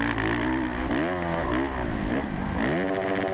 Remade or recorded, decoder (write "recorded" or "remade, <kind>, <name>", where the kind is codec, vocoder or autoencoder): recorded